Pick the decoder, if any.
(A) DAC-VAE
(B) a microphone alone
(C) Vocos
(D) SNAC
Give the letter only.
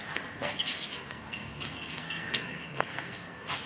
D